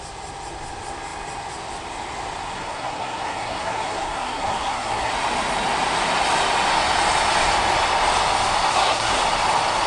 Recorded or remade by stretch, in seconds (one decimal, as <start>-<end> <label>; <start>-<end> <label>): 0.0-2.5 recorded; 2.5-5.1 remade; 5.1-8.7 recorded; 8.7-9.2 remade; 9.2-9.9 recorded